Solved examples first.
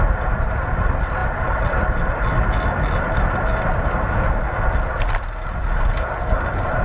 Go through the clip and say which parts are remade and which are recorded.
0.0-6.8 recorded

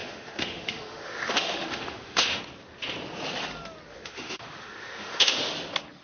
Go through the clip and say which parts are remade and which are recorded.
0.0-2.4 remade; 2.4-3.9 recorded; 3.9-5.5 remade; 5.5-6.0 recorded

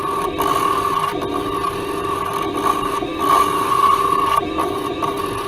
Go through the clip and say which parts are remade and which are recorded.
0.0-5.5 recorded

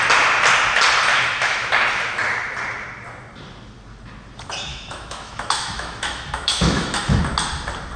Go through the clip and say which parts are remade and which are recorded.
0.0-1.1 recorded; 1.1-1.7 remade; 1.7-4.7 recorded; 4.7-7.2 remade; 7.2-8.0 recorded

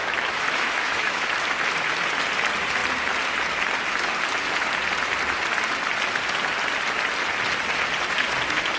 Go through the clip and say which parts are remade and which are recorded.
0.0-1.3 remade; 1.3-8.8 recorded